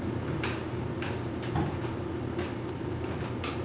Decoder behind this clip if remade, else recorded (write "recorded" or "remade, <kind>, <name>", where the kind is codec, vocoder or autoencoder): recorded